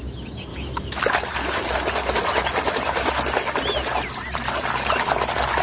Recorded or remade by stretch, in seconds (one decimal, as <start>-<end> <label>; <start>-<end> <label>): 0.0-0.5 recorded; 0.5-1.0 remade; 1.0-5.6 recorded